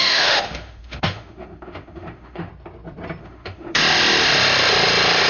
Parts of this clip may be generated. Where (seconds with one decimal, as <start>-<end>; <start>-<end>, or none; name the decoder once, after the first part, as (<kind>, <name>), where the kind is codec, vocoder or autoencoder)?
0.0-2.5 (autoencoder, DAC-VAE); 3.2-3.8